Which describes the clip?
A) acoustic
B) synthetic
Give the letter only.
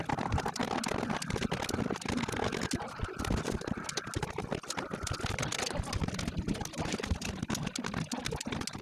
A